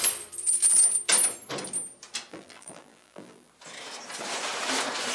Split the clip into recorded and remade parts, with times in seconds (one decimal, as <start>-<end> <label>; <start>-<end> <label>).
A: 0.0-2.3 recorded; 2.3-3.5 remade; 3.5-5.1 recorded